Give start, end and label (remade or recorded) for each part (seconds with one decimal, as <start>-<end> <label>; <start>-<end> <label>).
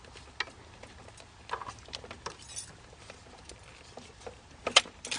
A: 0.0-5.2 recorded